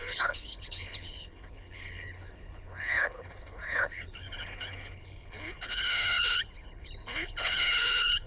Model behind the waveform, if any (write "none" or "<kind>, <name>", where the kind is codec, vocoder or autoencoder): codec, HILCodec